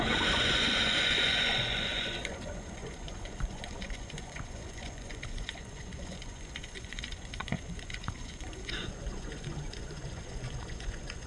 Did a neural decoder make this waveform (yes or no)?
yes